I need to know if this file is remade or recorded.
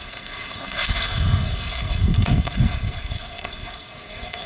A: remade